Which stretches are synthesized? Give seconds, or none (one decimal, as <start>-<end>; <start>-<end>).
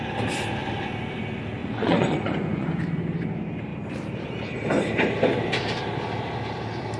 1.6-2.8